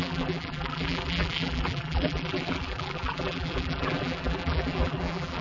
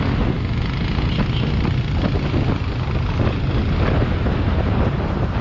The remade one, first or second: first